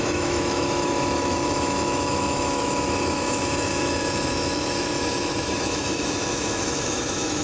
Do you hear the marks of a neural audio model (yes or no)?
yes